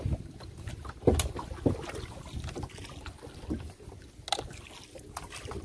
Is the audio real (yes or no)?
yes